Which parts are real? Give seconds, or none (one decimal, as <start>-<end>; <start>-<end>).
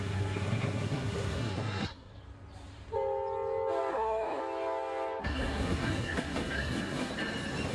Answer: 2.1-3.9; 4.4-5.2; 7.1-7.7